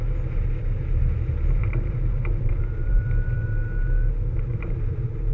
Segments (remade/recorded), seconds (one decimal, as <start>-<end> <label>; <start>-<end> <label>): 0.0-1.6 recorded; 1.6-3.0 remade; 3.0-4.5 recorded; 4.5-5.3 remade